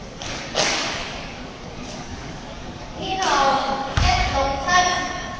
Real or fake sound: fake